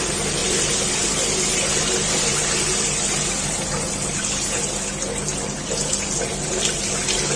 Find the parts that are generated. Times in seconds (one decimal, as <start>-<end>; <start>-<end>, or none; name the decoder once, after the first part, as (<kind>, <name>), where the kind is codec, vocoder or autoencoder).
none